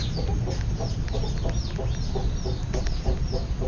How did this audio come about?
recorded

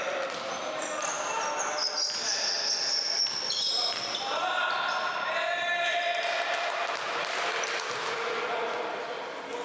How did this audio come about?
recorded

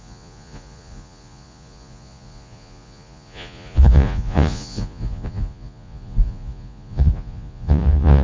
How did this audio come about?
remade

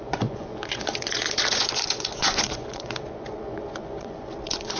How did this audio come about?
remade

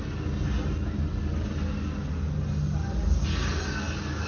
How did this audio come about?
recorded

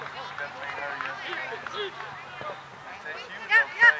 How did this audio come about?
recorded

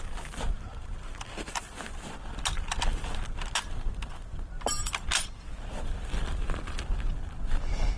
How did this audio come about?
recorded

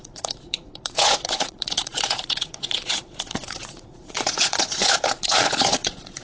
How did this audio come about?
remade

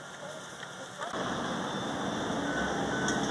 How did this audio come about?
recorded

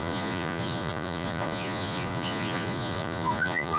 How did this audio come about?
remade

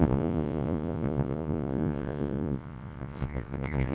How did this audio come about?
remade